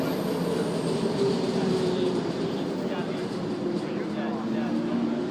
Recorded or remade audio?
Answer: recorded